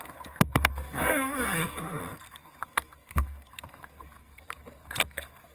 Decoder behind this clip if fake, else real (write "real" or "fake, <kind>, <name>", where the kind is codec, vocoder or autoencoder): fake, codec, SNAC